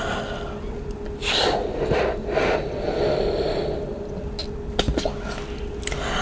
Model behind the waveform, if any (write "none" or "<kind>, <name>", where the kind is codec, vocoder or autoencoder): none